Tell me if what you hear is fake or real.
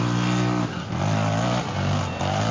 real